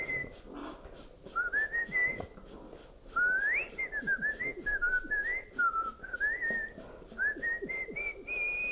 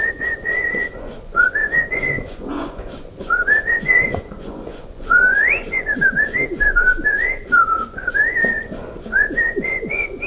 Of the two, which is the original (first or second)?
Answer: first